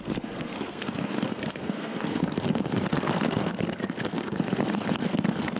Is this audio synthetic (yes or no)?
yes